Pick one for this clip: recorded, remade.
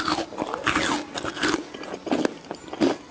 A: recorded